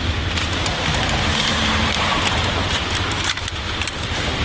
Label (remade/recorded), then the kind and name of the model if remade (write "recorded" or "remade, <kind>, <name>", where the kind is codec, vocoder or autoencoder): remade, vocoder, BigVGAN v2